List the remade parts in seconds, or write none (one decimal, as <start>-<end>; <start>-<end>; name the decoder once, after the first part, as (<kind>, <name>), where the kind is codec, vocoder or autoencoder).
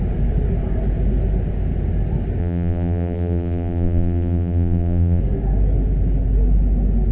2.4-5.2 (vocoder, BigVGAN v2)